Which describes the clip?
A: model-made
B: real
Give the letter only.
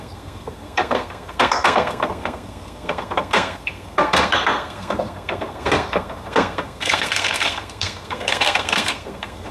A